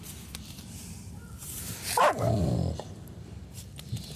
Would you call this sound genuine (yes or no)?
no